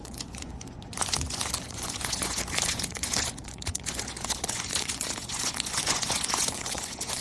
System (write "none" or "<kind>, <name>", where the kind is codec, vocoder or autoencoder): vocoder, Vocos